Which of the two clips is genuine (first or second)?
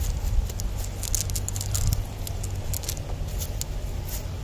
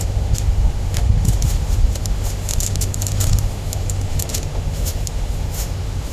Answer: first